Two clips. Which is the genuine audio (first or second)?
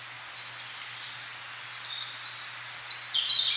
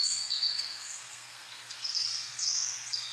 first